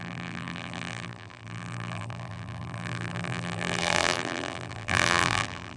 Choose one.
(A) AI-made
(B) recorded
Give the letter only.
A